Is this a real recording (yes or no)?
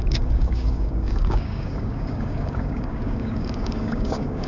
no